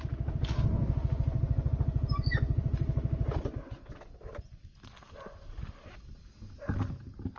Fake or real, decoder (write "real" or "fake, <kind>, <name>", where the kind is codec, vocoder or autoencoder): real